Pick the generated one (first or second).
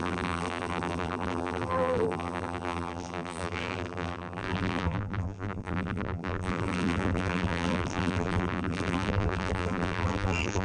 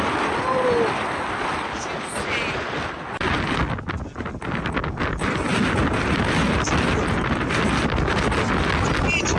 first